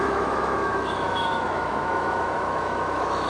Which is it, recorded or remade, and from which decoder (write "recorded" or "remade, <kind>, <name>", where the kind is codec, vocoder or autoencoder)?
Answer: remade, autoencoder, DAC-VAE